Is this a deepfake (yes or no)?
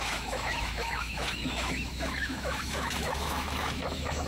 yes